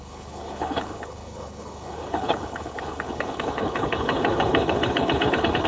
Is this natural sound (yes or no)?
no